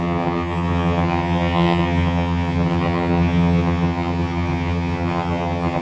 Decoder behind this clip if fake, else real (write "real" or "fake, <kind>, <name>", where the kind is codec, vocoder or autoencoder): fake, vocoder, HiFi-GAN